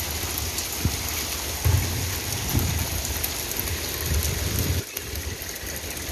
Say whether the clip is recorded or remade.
recorded